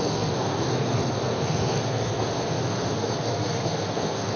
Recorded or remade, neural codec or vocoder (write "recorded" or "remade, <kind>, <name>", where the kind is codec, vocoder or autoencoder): remade, codec, SNAC